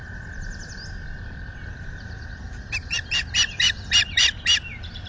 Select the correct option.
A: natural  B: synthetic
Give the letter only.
A